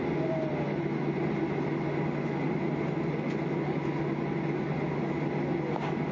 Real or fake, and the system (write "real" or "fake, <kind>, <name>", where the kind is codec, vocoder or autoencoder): real